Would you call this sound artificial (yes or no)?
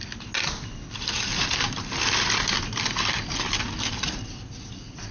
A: no